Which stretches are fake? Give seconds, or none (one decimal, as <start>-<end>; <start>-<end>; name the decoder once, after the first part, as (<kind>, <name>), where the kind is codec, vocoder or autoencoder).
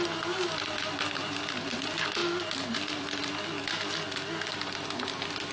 none